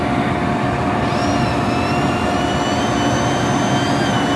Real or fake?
real